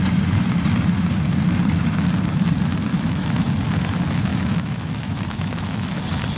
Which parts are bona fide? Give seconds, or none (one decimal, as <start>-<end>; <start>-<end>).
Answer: 0.0-2.9; 3.4-4.3; 6.0-6.4